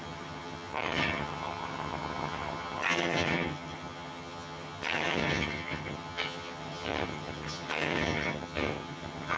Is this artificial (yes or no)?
yes